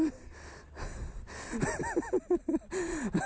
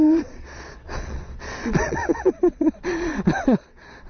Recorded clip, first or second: first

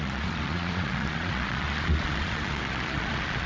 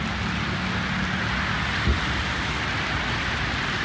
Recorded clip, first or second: second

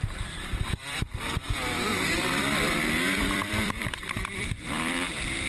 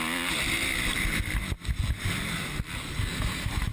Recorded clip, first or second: second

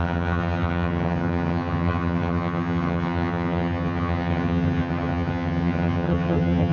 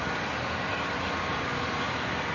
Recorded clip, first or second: second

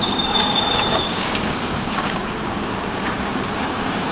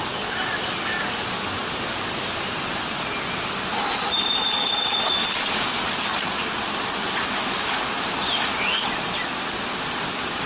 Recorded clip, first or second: second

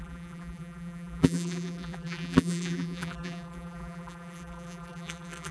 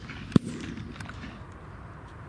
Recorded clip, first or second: second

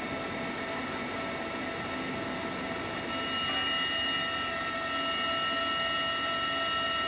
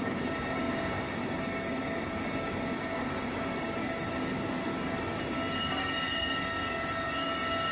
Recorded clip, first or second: first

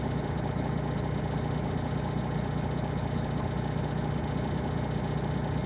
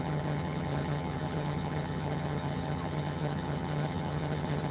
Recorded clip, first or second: first